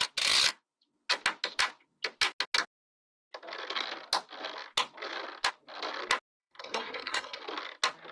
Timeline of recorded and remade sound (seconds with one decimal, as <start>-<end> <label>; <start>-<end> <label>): 0.0-6.4 recorded; 6.4-7.4 remade; 7.4-8.1 recorded